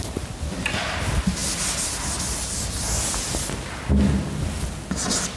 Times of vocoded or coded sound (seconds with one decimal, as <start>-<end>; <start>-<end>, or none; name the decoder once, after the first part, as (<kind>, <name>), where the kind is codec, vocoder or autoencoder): none